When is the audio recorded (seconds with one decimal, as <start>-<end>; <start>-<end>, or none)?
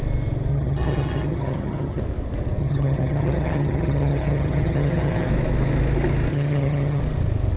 0.0-0.5; 2.0-2.6; 5.3-6.3; 7.0-7.6